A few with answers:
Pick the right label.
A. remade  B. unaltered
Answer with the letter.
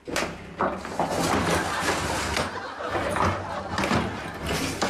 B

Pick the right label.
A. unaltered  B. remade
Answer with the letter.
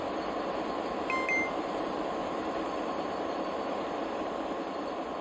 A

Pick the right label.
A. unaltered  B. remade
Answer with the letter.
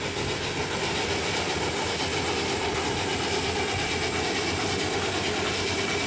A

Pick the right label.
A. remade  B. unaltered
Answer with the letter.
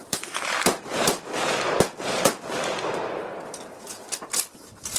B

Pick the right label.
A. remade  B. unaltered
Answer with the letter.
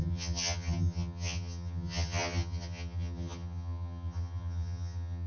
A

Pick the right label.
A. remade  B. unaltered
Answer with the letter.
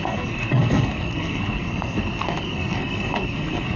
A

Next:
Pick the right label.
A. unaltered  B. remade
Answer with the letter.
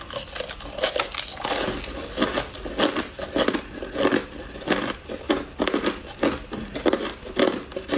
A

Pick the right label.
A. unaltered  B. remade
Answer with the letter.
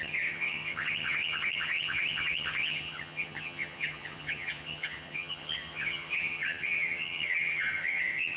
B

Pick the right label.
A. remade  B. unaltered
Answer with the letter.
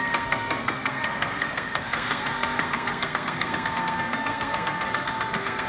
A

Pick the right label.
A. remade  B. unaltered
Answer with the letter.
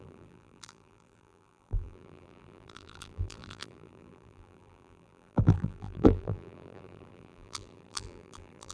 A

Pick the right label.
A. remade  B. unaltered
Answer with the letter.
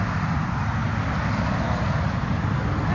B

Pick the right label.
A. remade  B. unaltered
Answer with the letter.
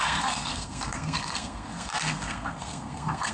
A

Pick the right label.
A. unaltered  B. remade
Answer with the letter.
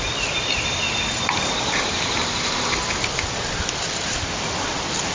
A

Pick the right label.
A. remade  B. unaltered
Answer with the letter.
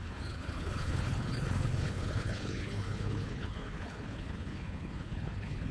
A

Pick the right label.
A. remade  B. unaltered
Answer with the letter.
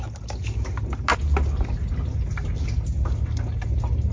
B